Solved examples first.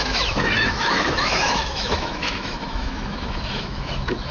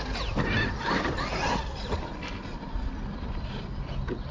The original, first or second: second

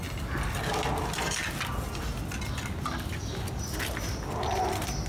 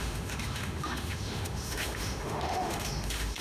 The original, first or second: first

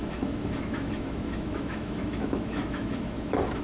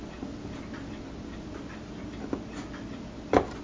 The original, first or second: second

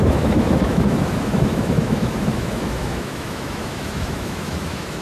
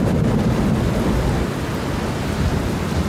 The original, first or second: second